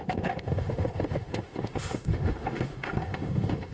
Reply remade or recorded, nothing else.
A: remade